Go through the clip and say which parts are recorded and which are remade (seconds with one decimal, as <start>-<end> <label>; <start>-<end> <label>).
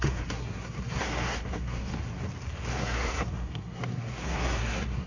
0.0-1.9 remade; 1.9-2.7 recorded; 2.7-5.1 remade